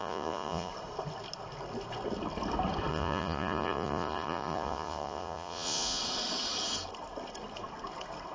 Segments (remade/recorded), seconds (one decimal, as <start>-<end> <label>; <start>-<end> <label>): 0.0-0.7 remade; 0.7-2.9 recorded; 2.9-6.0 remade; 6.0-8.3 recorded